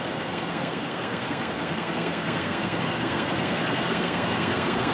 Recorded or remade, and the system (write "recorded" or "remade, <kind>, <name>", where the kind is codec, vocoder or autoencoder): remade, codec, SNAC